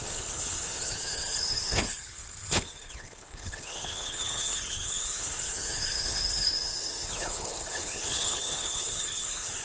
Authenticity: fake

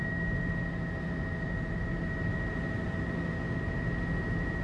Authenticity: real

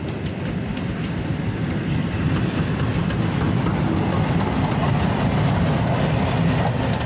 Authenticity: real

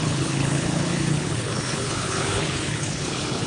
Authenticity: fake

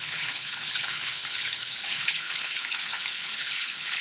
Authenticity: fake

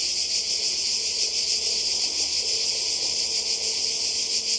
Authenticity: real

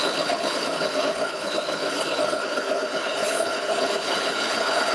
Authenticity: fake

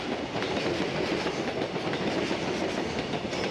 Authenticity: real